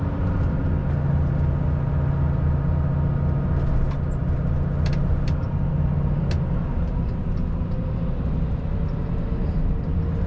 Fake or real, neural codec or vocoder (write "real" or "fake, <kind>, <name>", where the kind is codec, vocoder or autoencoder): real